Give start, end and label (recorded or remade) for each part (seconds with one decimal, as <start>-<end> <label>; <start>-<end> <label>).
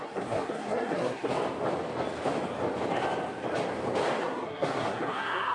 0.0-1.3 remade; 1.3-4.2 recorded; 4.2-5.5 remade